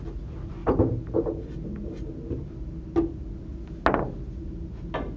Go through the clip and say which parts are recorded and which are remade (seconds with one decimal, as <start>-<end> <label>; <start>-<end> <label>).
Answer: 0.0-5.2 recorded